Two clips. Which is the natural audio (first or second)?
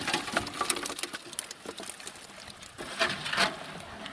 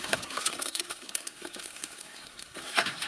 first